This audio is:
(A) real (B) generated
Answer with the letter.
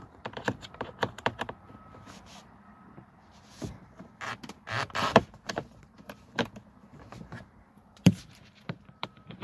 B